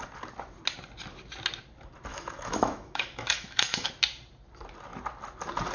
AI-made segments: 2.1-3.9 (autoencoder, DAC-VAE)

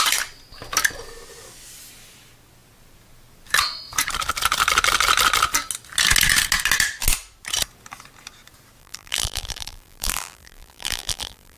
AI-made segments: 8.8-11.6 (vocoder, BigVGAN v2)

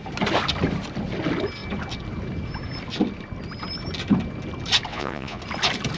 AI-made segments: 4.9-5.4 (vocoder, Vocos)

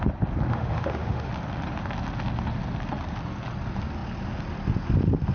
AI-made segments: 0.5-1.3 (autoencoder, DAC-VAE)